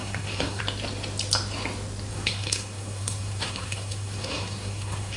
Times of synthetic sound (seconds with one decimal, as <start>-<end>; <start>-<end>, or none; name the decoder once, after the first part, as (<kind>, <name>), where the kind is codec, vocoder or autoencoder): 0.0-0.6 (codec, SNAC); 2.1-5.2